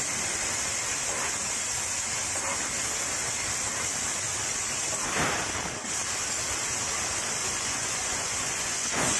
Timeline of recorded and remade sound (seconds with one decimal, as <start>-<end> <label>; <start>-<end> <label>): 0.0-7.4 recorded; 7.4-9.2 remade